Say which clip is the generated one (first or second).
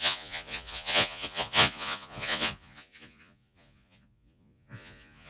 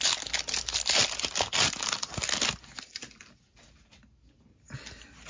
first